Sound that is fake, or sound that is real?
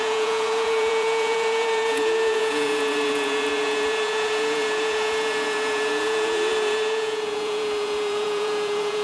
fake